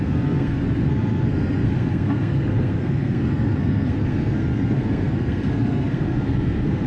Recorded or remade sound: remade